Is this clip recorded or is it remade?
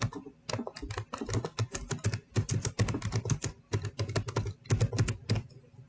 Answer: recorded